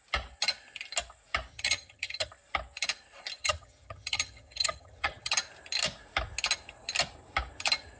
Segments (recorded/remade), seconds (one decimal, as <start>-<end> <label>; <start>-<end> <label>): 0.0-1.5 recorded; 1.5-2.3 remade; 2.3-3.4 recorded; 3.4-5.3 remade; 5.3-8.0 recorded